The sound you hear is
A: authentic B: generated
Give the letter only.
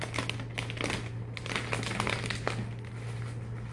A